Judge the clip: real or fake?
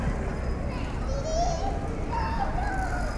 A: real